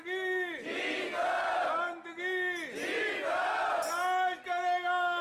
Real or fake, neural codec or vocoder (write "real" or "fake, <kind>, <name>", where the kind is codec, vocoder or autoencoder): real